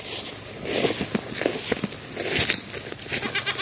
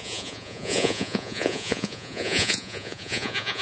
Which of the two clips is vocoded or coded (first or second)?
second